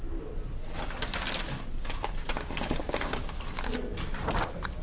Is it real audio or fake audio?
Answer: real